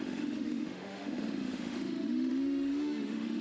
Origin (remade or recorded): remade